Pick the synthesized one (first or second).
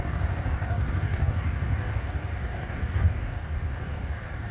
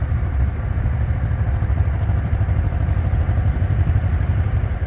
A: first